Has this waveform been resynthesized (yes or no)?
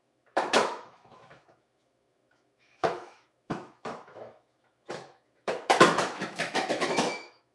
yes